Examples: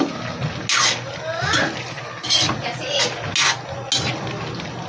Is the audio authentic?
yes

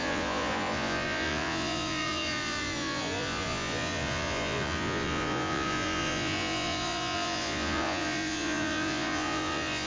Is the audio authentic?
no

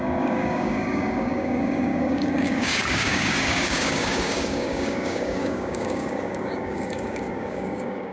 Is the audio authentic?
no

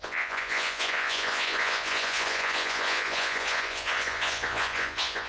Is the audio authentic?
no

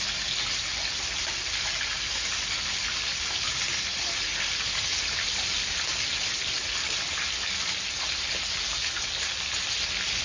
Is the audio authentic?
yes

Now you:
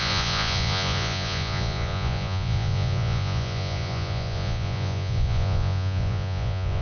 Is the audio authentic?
no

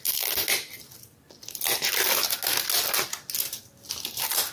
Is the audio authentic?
yes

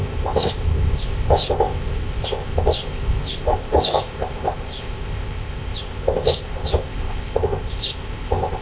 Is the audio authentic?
no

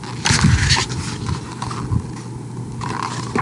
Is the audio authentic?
yes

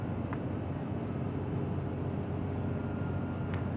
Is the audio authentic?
yes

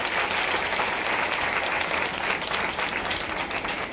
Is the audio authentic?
yes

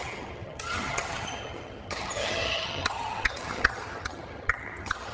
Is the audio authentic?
no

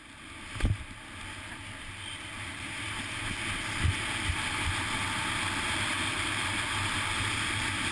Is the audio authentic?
yes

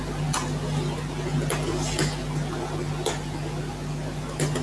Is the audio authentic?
yes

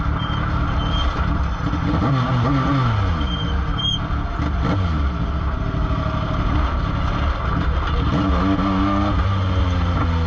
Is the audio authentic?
yes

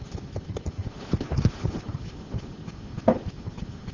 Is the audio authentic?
yes